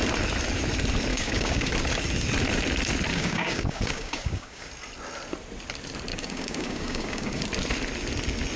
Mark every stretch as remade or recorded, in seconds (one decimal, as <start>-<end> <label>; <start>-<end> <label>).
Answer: 0.0-1.1 recorded; 1.1-1.7 remade; 1.7-3.1 recorded; 3.1-4.7 remade; 4.7-6.1 recorded; 6.1-7.4 remade; 7.4-8.6 recorded